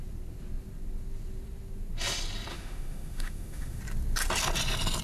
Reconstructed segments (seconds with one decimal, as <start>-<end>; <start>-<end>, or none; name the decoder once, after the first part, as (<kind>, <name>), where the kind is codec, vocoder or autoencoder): 2.5-3.8 (autoencoder, DAC-VAE)